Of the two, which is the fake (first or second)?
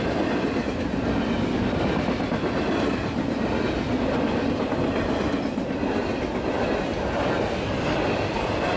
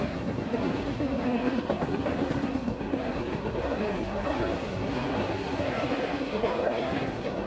second